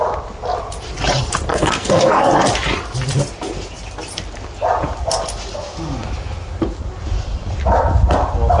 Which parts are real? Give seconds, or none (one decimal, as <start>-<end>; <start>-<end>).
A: 0.0-1.5; 2.2-8.6